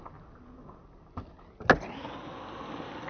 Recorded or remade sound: recorded